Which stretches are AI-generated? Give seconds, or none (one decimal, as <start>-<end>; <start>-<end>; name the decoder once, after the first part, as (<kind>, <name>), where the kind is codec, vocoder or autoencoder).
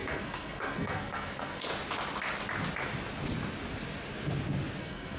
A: 0.0-1.7 (codec, SNAC); 4.8-5.2